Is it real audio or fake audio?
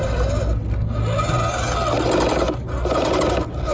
real